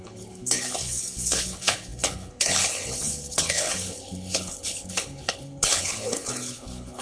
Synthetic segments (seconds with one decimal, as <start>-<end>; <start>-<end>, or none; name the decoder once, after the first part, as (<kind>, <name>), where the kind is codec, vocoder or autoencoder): 0.0-7.0 (codec, HILCodec)